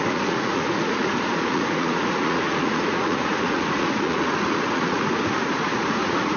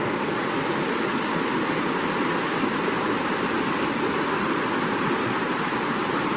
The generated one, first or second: first